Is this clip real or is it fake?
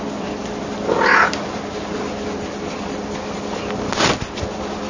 real